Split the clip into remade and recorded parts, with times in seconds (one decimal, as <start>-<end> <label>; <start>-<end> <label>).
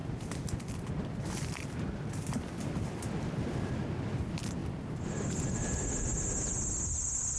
0.0-7.4 recorded